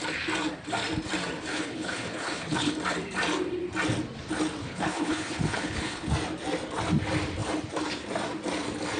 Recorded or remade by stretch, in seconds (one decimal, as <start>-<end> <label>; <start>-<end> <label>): 0.0-1.5 recorded; 1.5-2.7 remade; 2.7-4.6 recorded; 4.6-6.1 remade; 6.1-9.0 recorded